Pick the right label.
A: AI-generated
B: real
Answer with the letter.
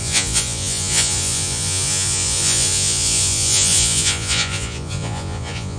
A